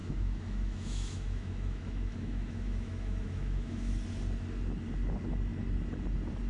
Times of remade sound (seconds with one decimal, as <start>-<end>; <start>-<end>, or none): 0.0-3.9